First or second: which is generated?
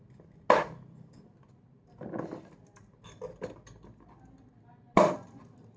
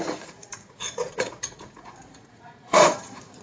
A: second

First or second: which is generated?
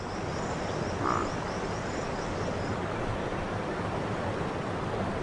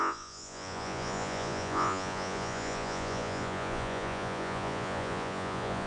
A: second